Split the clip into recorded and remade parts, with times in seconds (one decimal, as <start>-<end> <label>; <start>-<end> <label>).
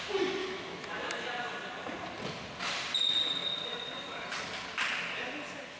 0.0-0.4 recorded; 0.4-1.1 remade; 1.1-5.8 recorded